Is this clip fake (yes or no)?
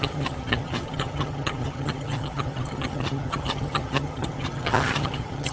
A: yes